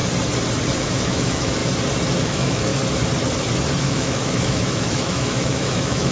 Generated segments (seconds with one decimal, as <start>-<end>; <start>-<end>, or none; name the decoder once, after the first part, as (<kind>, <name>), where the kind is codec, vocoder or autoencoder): 0.8-1.6 (autoencoder, DAC-VAE); 2.2-2.7; 3.8-6.1